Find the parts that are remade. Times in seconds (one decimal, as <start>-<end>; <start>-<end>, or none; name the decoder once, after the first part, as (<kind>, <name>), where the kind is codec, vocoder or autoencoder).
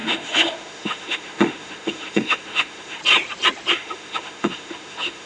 0.0-3.0 (autoencoder, DAC-VAE); 3.7-5.3